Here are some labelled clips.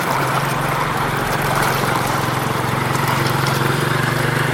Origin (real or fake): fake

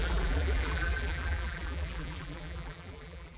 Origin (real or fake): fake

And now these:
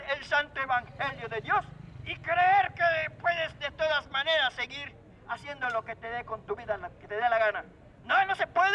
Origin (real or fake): real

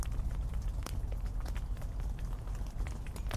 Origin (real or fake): real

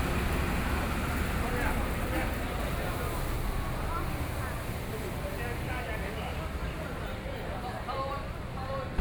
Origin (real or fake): real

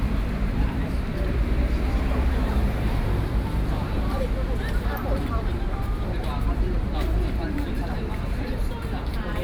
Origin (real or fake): fake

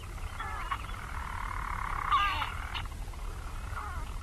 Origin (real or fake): fake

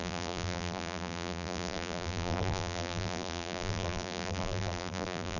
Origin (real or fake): fake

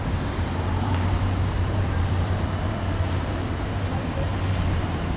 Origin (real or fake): fake